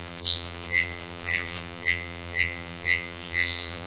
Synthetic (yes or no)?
yes